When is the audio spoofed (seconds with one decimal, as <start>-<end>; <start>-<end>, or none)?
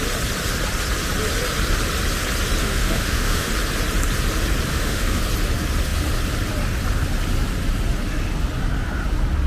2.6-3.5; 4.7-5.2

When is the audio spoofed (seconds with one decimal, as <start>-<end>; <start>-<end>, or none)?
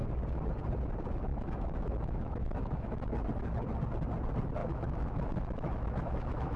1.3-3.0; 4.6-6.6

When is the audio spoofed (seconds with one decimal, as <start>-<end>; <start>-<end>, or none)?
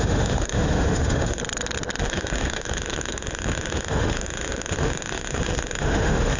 0.0-1.4; 2.0-6.4